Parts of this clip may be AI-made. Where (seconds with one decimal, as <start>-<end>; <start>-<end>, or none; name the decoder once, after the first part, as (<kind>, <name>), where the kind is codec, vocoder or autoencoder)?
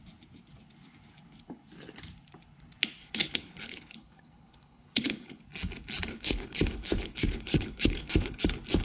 3.0-5.4 (codec, HILCodec); 6.1-8.4